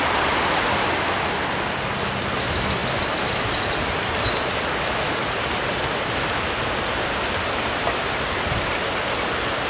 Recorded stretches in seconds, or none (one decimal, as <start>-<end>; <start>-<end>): 0.0-9.7